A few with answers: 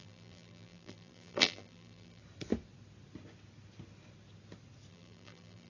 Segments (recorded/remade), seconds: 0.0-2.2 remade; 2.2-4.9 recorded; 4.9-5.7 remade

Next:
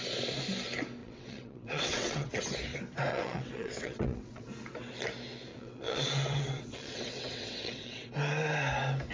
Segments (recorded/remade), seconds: 0.0-1.0 recorded; 1.0-2.4 remade; 2.4-3.1 recorded; 3.1-4.5 remade; 4.5-5.5 recorded; 5.5-8.1 remade; 8.1-9.1 recorded

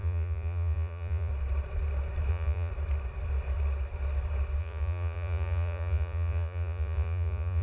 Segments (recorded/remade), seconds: 0.0-1.3 remade; 1.3-2.3 recorded; 2.3-2.7 remade; 2.7-4.6 recorded; 4.6-7.6 remade

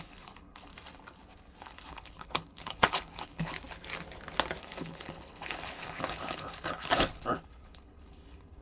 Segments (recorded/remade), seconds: 0.0-0.7 remade; 0.7-1.6 recorded; 1.6-3.5 remade; 3.5-4.6 recorded; 4.6-8.6 remade

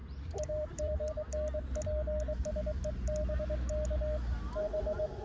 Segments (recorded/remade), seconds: 0.0-1.1 remade; 1.1-5.2 recorded

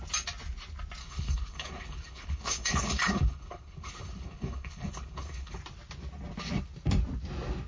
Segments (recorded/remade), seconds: 0.0-1.0 recorded; 1.0-5.6 remade; 5.6-7.7 recorded